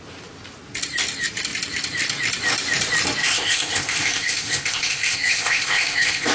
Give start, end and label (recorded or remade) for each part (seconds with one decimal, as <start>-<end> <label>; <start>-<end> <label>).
0.0-3.2 recorded; 3.2-6.3 remade